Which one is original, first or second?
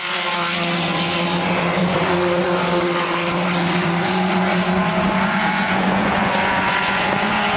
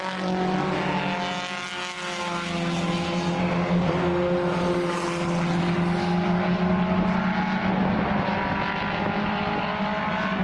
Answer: second